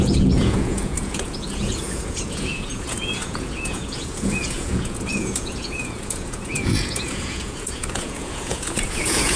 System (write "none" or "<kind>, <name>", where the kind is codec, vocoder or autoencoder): vocoder, Vocos